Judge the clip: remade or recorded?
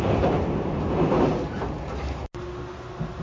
recorded